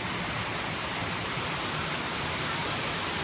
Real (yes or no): yes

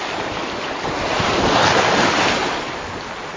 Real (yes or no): yes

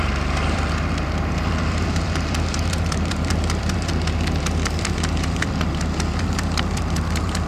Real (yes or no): no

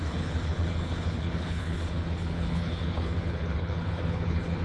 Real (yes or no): no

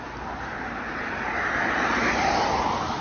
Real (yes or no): yes